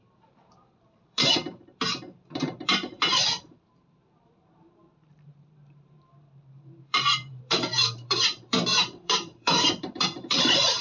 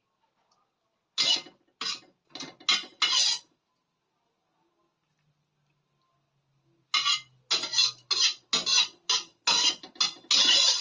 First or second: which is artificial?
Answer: first